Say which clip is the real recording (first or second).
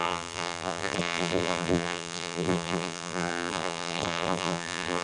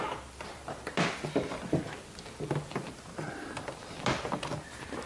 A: second